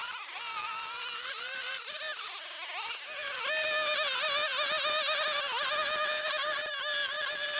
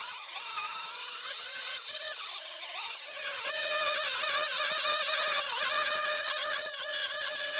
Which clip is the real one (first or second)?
first